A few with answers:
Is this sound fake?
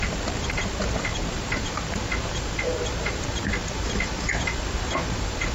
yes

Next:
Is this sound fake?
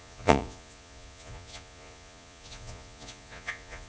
yes